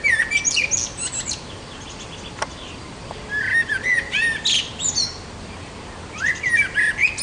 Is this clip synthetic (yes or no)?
no